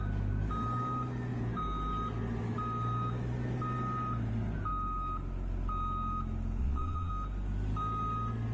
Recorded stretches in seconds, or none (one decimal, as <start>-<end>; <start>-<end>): 0.0-6.6; 7.1-8.5